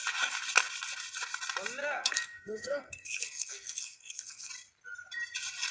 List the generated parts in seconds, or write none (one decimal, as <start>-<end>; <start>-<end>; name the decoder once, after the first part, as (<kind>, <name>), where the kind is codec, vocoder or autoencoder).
1.8-4.5 (codec, SNAC)

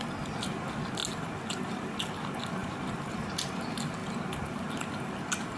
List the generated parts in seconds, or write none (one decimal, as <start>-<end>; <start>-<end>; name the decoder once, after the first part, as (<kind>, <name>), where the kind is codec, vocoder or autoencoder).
none

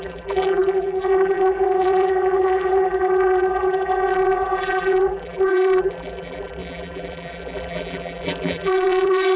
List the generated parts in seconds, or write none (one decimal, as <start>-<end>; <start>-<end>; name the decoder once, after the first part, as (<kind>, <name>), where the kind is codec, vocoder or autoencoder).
0.0-9.4 (vocoder, BigVGAN v2)